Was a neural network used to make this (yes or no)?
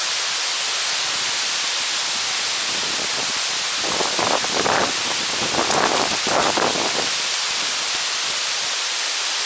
no